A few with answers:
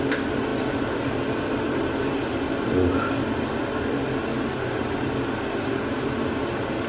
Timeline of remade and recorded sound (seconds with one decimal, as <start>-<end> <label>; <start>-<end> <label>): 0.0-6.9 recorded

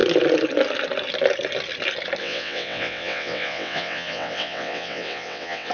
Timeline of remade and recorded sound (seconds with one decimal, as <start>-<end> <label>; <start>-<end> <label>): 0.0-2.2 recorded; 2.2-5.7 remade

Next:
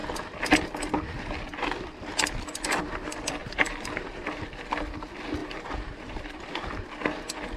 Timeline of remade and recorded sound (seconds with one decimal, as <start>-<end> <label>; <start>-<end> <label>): 0.0-3.4 recorded; 3.4-4.4 remade; 4.4-5.4 recorded; 5.4-6.5 remade; 6.5-7.6 recorded

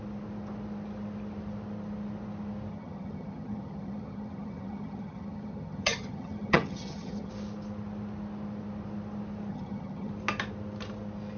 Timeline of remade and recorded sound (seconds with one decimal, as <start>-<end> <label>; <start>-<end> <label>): 0.0-2.7 recorded; 2.7-7.3 remade; 7.3-9.5 recorded; 9.5-10.1 remade; 10.1-11.4 recorded